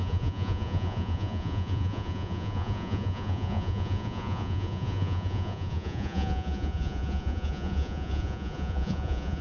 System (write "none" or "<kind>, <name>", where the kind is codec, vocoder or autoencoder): vocoder, Vocos